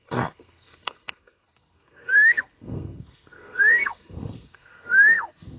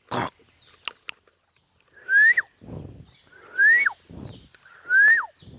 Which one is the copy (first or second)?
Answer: first